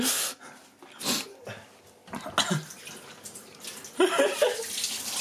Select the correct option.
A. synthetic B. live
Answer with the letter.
B